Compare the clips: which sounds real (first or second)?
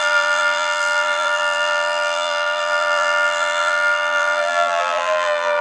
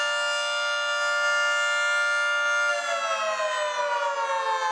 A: second